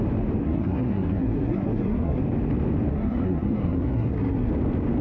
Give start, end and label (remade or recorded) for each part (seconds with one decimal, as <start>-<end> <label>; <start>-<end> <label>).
0.0-0.4 recorded; 0.4-2.2 remade; 2.2-2.9 recorded; 2.9-4.5 remade; 4.5-5.0 recorded